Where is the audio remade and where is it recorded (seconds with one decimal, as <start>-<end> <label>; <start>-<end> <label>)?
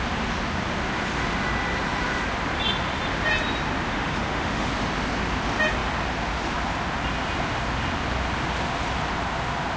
0.0-3.9 recorded; 3.9-4.7 remade; 4.7-9.8 recorded